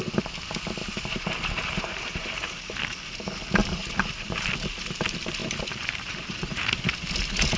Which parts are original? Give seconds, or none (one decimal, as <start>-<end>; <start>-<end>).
0.0-0.8; 2.7-3.6; 4.5-5.4; 6.8-7.6